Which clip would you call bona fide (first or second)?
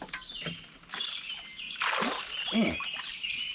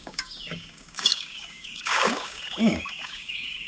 first